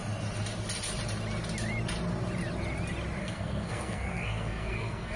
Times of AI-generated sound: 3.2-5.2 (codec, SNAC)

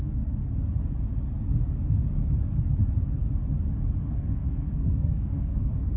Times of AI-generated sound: 0.0-0.4 (codec, SNAC); 4.0-6.0